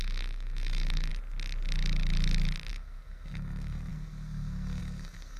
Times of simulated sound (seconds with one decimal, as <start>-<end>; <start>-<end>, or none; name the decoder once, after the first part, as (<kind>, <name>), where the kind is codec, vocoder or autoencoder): 0.0-1.1 (codec, SNAC); 2.7-5.4